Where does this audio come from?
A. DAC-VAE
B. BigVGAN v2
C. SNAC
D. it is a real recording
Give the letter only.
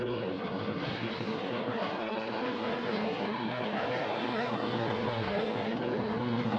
C